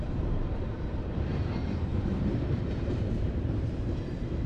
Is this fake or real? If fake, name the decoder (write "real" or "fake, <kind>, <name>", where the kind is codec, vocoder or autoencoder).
fake, vocoder, BigVGAN v2